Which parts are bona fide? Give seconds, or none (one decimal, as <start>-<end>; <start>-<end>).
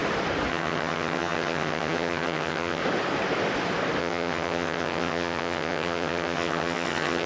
0.0-0.5; 2.8-4.0